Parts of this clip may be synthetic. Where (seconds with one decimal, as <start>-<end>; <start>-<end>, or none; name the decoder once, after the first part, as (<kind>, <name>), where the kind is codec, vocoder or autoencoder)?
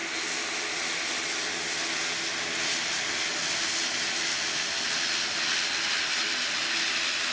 none